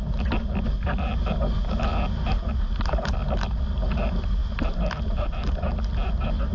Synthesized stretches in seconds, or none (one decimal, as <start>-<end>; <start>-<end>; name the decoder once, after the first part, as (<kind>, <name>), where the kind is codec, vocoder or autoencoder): none